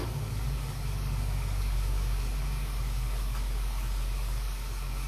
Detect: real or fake fake